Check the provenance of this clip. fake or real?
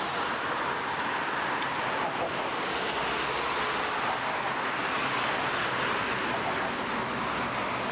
real